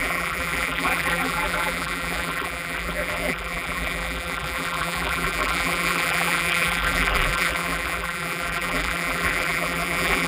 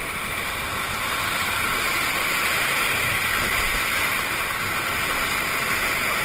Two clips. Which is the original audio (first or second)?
second